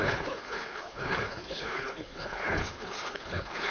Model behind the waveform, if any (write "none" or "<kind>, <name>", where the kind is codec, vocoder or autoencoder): codec, HILCodec